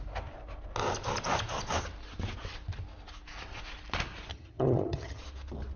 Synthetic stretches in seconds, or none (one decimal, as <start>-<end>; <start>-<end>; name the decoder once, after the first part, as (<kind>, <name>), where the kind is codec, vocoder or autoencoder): 4.3-5.2 (vocoder, HiFi-GAN)